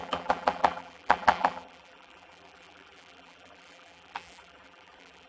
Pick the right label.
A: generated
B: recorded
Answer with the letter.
A